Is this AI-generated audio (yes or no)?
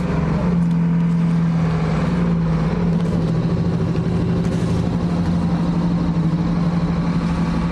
no